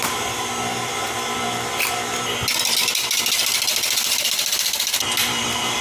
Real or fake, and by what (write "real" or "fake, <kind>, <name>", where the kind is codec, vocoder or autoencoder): real